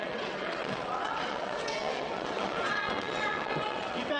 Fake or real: fake